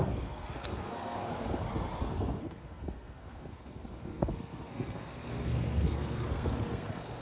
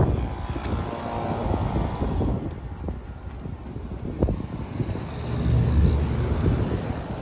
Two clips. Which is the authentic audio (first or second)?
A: second